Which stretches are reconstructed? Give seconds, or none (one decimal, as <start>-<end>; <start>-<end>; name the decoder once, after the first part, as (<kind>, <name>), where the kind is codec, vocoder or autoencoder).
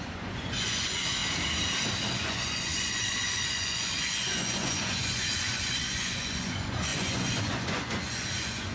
0.0-1.2 (vocoder, Vocos); 2.1-8.7